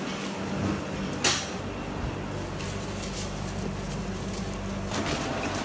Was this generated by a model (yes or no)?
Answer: no